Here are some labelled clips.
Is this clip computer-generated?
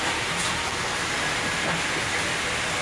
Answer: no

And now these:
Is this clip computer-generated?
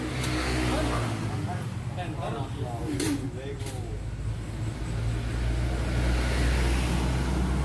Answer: no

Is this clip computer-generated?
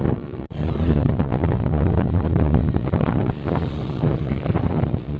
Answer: yes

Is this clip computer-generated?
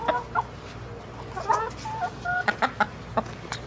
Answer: no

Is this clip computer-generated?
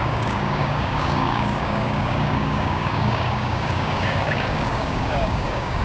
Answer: yes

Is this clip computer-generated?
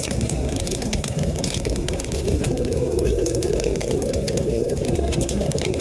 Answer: yes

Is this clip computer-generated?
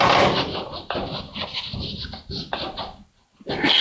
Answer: no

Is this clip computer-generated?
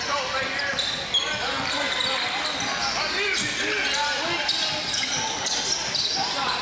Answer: no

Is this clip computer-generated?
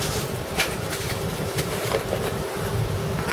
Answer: no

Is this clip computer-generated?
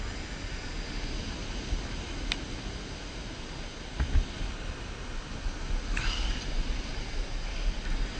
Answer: no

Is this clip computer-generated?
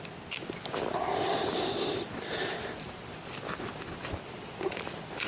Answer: no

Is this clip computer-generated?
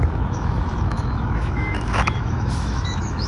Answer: yes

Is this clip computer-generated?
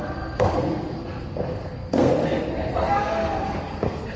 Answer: yes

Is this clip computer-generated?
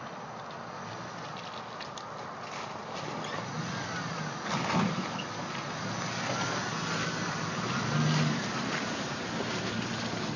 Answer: no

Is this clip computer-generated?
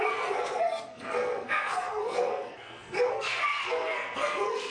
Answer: yes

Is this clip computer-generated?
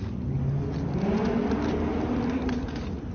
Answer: no